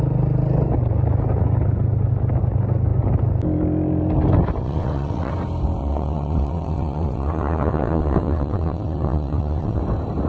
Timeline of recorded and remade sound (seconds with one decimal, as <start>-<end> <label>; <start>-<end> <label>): 0.0-4.6 recorded; 4.6-5.3 remade; 5.3-5.8 recorded; 5.8-9.8 remade; 9.8-10.3 recorded